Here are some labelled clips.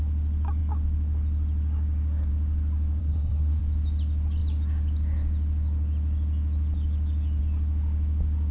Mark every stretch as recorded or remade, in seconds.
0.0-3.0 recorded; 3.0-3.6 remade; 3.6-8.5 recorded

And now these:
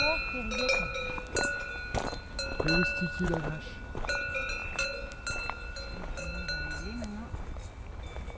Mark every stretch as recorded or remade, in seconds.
0.0-8.4 recorded

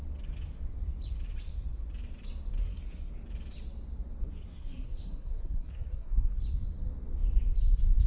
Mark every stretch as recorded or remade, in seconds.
0.0-2.6 recorded; 2.6-3.1 remade; 3.1-4.2 recorded; 4.2-6.4 remade; 6.4-8.1 recorded

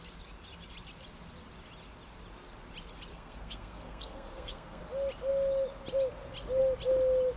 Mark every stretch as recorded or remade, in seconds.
0.0-3.1 recorded; 3.1-4.8 remade; 4.8-7.4 recorded

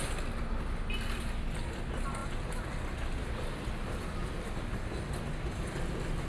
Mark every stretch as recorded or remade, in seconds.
0.0-6.3 recorded

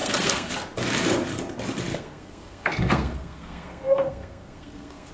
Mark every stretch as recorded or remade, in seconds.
0.0-0.5 remade; 0.5-1.9 recorded; 1.9-5.1 remade

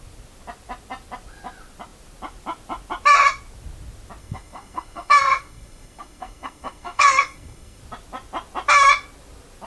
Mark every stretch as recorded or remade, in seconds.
0.0-4.2 recorded; 4.2-7.8 remade; 7.8-9.7 recorded

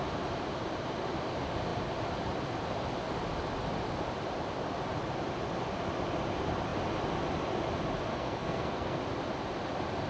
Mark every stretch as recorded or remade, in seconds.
0.0-8.1 recorded; 8.1-9.0 remade; 9.0-10.1 recorded